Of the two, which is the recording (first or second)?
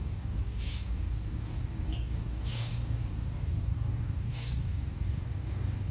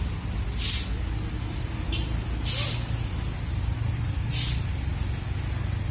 second